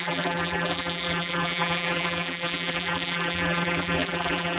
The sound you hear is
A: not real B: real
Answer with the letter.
A